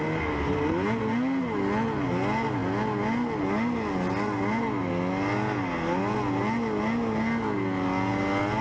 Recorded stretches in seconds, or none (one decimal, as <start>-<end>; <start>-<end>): 0.0-8.6